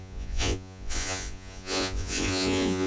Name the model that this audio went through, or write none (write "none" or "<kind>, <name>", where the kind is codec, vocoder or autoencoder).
vocoder, Vocos